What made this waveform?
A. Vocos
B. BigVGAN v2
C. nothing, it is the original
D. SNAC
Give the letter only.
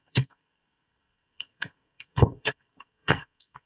D